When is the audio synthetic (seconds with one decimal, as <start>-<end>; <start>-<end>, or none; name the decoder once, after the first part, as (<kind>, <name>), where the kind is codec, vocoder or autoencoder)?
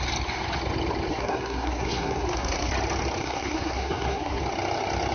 1.1-2.7 (codec, SNAC); 3.2-4.4